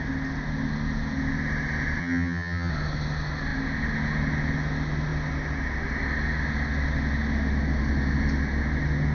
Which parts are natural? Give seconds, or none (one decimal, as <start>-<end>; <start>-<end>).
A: 0.0-2.0; 2.7-9.1